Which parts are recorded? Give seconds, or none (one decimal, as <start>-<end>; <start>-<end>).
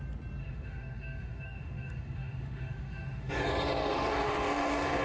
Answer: 0.0-0.4; 3.3-3.8